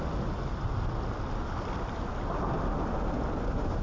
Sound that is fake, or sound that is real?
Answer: real